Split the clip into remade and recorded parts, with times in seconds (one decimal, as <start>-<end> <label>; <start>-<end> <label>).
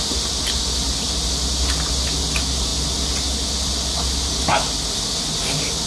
0.0-5.9 recorded